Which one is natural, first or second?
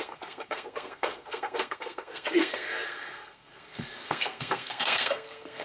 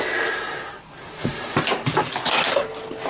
second